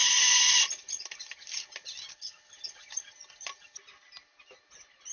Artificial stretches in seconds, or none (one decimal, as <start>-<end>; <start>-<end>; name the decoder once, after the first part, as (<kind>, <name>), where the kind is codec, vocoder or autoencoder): none